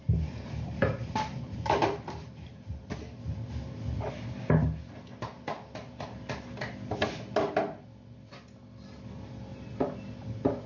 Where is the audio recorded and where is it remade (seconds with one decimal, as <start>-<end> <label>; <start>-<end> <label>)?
0.0-2.9 remade; 2.9-10.7 recorded